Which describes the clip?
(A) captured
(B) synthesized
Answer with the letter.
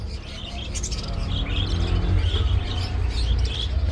A